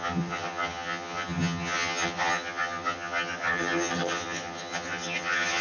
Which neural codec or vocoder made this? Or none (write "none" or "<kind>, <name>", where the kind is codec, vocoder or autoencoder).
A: vocoder, HiFi-GAN